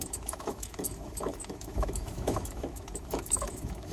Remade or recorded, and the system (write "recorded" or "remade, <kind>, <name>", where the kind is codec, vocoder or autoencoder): remade, autoencoder, DAC-VAE